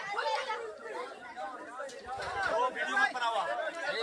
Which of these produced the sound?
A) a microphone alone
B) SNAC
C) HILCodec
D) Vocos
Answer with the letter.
A